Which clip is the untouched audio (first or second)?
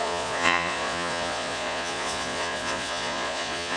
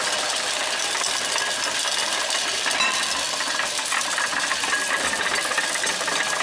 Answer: second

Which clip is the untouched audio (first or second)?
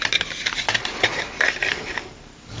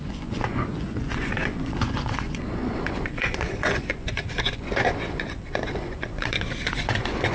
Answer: first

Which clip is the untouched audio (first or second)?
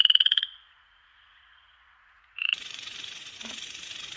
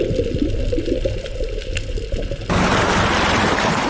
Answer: second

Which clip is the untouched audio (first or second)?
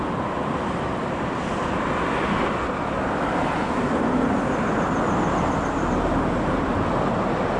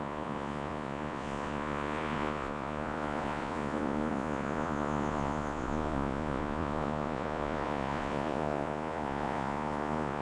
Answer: first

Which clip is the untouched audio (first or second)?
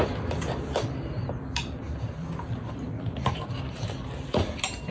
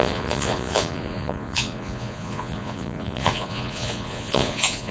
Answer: first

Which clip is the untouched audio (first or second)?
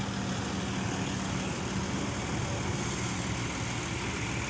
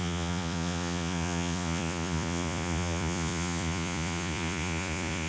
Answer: first